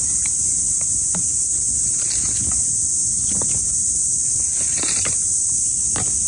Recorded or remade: recorded